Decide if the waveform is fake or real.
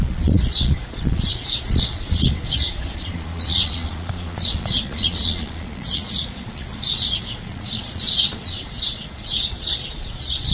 fake